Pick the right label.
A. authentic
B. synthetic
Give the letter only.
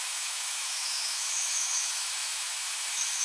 B